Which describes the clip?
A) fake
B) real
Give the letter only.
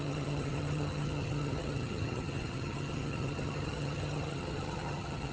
A